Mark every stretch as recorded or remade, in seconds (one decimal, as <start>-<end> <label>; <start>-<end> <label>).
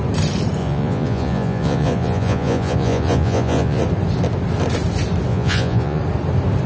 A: 0.0-0.6 recorded; 0.6-3.8 remade; 3.8-5.3 recorded; 5.3-6.0 remade; 6.0-6.7 recorded